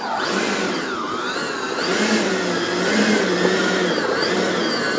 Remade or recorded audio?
recorded